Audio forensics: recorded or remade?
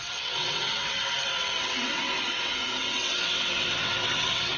remade